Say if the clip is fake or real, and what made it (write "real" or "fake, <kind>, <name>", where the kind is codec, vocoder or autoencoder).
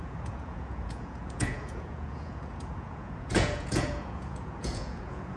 fake, vocoder, Vocos